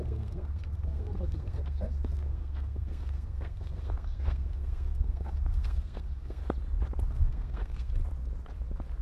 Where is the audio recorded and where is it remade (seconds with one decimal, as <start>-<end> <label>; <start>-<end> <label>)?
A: 0.0-6.4 remade; 6.4-7.1 recorded; 7.1-8.0 remade; 8.0-9.0 recorded